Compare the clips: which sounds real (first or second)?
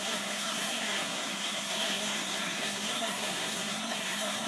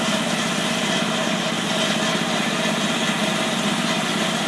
second